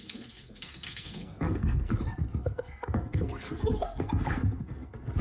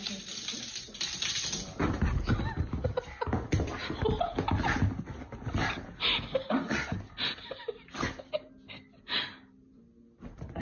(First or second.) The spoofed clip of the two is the first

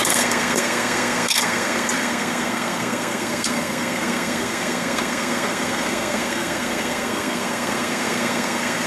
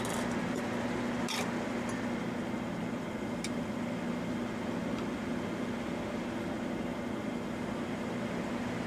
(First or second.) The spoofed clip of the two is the first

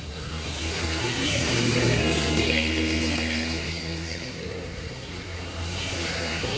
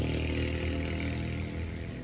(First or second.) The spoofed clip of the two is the first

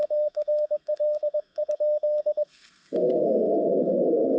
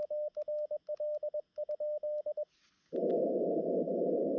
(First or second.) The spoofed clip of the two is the first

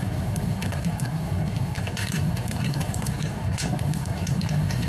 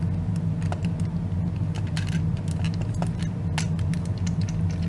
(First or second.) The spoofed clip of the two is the first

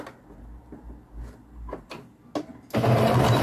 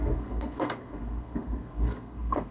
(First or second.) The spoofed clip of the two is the second